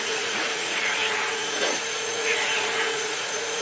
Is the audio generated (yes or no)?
yes